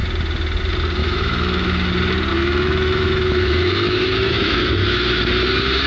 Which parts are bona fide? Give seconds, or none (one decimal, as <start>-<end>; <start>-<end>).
0.0-1.0; 1.9-2.3; 5.2-5.9